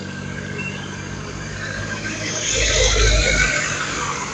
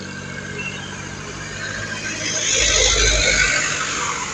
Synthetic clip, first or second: first